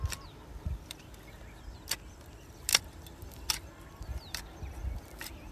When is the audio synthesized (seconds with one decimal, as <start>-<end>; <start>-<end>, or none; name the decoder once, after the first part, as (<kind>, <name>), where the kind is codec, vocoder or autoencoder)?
none